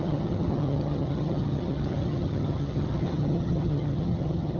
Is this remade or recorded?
remade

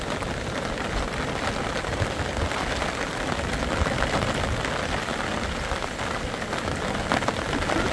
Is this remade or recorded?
recorded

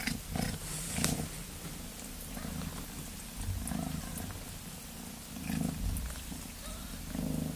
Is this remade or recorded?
recorded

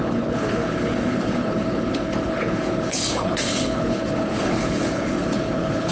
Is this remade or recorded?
remade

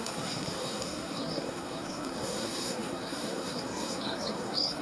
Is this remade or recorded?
remade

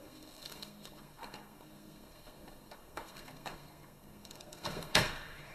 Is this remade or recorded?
remade